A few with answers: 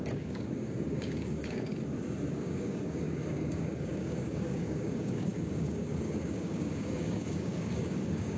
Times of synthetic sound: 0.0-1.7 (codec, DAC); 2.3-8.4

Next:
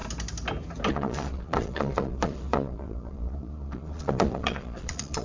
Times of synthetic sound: 0.9-5.2 (vocoder, Vocos)

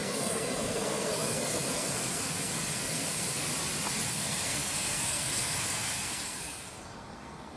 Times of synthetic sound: 0.0-3.5 (codec, SNAC); 4.1-7.6

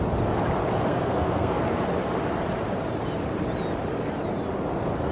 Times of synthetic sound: 0.9-1.6 (codec, SNAC)